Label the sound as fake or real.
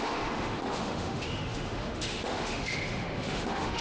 fake